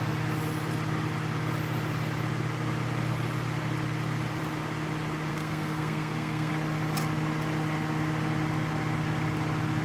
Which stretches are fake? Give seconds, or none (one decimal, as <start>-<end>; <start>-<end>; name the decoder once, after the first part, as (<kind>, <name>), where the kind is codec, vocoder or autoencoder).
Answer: 5.3-6.5 (codec, SNAC)

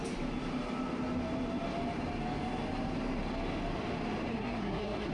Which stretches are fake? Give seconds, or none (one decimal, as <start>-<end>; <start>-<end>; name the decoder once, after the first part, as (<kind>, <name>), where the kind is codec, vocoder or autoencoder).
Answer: 4.3-5.1 (codec, SNAC)

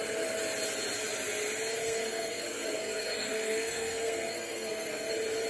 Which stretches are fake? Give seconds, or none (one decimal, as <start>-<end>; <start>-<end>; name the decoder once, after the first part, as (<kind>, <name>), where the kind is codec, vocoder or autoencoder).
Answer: 1.8-5.1 (codec, SNAC)

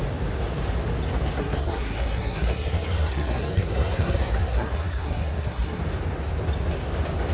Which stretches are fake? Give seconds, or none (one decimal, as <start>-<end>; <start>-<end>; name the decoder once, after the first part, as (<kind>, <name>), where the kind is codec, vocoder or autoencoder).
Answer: 1.4-5.8 (codec, SNAC)

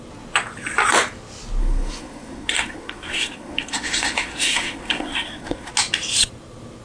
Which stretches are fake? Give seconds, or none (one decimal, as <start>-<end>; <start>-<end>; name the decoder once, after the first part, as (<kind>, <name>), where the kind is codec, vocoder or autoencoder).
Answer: 1.6-5.7 (codec, SNAC)

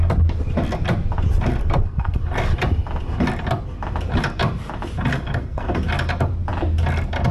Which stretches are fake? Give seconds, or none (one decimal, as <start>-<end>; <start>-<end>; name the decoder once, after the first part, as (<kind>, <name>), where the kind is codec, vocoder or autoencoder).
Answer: 1.6-2.2 (codec, SNAC); 5.1-5.8

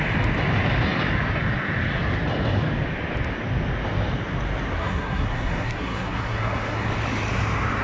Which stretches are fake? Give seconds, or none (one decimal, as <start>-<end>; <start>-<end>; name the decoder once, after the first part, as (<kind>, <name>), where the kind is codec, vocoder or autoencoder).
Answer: 4.8-6.9 (codec, SNAC)